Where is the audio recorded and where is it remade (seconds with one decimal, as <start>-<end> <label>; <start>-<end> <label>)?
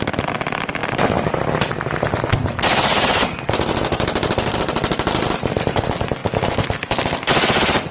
0.0-7.9 recorded